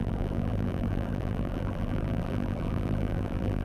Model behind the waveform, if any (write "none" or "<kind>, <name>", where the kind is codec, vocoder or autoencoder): vocoder, BigVGAN v2